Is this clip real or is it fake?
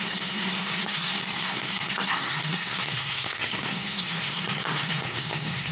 fake